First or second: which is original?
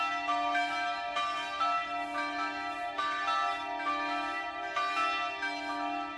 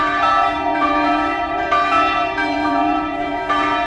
first